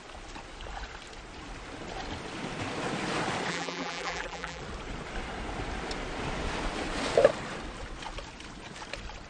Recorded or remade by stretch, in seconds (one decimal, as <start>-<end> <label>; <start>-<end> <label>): 0.0-3.5 recorded; 3.5-4.6 remade; 4.6-9.3 recorded